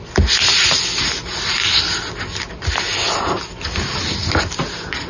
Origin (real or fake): real